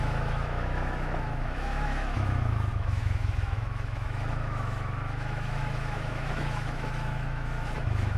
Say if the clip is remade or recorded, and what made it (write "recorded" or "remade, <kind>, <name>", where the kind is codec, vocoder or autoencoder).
remade, autoencoder, DAC-VAE